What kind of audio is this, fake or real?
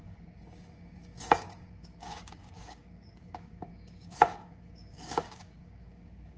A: fake